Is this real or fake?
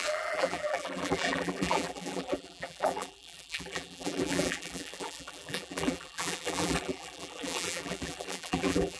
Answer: fake